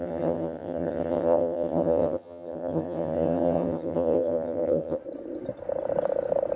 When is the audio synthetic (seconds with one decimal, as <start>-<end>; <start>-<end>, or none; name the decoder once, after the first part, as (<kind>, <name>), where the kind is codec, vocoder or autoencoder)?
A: 0.0-5.0 (vocoder, HiFi-GAN)